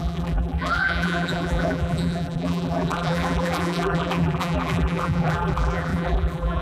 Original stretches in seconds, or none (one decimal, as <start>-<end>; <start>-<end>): none